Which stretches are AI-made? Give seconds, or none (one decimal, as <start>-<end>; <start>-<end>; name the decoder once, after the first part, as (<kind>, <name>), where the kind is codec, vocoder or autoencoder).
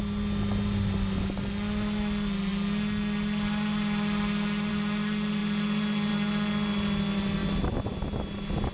none